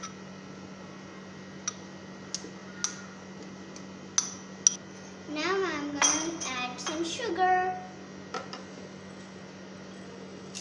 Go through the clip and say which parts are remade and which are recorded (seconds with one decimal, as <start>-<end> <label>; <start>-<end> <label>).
0.0-10.6 recorded